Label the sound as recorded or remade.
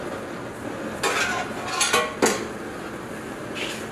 recorded